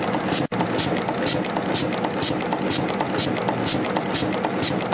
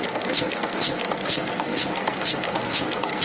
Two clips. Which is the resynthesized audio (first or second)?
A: second